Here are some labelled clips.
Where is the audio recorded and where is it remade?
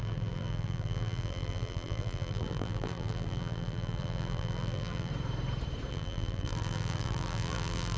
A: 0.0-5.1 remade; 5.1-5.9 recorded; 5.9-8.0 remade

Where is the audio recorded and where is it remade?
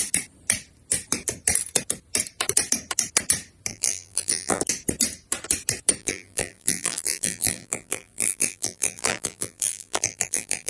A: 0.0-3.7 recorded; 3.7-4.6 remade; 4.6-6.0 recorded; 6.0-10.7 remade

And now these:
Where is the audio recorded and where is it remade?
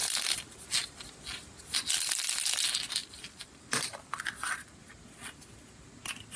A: 0.0-3.0 recorded; 3.0-4.1 remade; 4.1-6.4 recorded